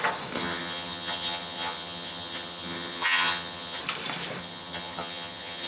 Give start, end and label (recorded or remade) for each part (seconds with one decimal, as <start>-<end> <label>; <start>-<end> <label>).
0.0-0.4 recorded; 0.4-3.8 remade; 3.8-4.4 recorded; 4.4-5.7 remade